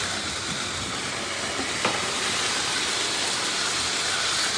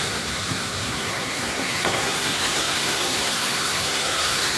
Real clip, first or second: first